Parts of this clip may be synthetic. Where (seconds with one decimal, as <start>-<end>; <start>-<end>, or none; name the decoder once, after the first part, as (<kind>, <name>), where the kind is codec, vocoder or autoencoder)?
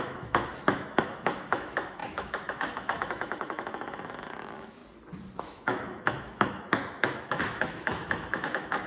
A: 0.0-4.8 (autoencoder, DAC-VAE); 5.4-8.9